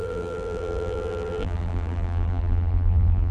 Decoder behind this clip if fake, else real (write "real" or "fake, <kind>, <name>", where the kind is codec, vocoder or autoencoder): fake, vocoder, BigVGAN v2